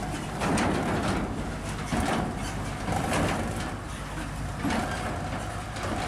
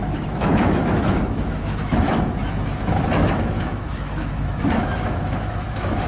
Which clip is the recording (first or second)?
first